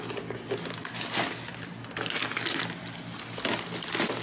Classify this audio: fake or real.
real